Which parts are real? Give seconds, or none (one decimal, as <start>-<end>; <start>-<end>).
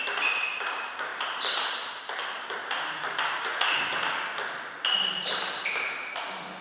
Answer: 0.0-6.6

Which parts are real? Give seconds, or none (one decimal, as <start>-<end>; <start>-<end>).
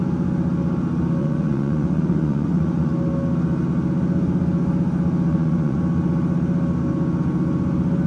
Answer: 0.0-1.2; 2.9-5.3; 5.8-8.1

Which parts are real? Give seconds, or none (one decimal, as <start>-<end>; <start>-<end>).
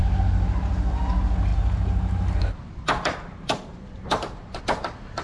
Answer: 0.0-1.5; 4.6-5.2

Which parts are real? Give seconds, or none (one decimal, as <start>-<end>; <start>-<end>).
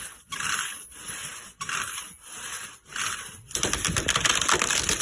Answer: 0.0-5.0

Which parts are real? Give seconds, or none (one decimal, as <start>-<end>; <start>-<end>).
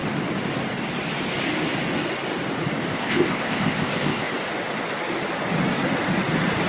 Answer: 0.0-2.9; 4.3-6.7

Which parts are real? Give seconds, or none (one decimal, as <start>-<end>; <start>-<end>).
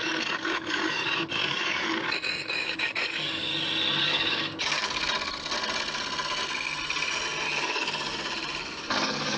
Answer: 3.5-4.0; 5.0-7.6; 8.1-8.6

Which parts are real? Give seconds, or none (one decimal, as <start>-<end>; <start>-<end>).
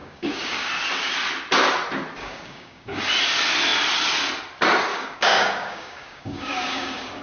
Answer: 0.7-2.2; 3.0-4.9